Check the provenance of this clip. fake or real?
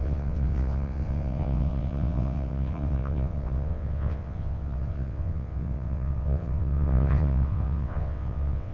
fake